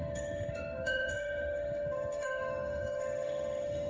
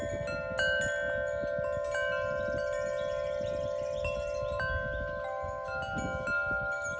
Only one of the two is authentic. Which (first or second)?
second